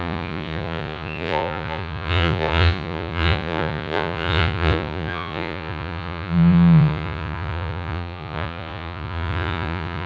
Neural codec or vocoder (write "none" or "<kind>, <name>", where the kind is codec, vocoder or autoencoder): vocoder, Vocos